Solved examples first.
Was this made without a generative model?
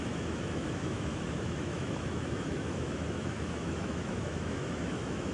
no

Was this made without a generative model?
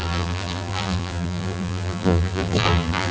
no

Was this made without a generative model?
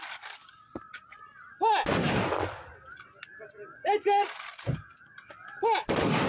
yes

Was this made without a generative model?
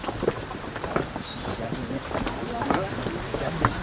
yes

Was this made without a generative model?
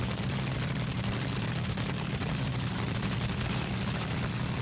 no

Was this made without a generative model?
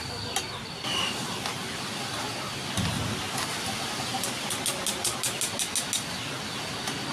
yes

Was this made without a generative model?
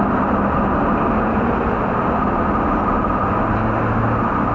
yes